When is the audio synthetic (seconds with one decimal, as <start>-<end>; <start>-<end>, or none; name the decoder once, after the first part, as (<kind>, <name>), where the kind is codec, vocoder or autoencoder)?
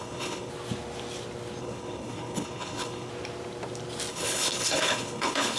0.0-0.5 (codec, HILCodec); 1.6-3.1; 4.1-5.6